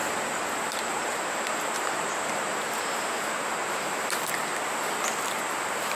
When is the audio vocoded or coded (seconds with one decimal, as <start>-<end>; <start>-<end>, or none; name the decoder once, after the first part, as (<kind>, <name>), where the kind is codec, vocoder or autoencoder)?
0.0-4.5 (vocoder, BigVGAN v2); 5.4-5.9